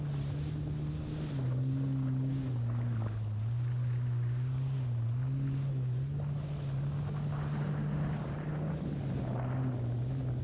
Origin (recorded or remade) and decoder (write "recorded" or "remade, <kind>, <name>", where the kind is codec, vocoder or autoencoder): recorded